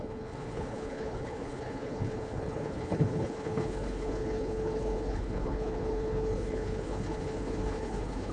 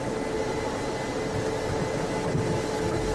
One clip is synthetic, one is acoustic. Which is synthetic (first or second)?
first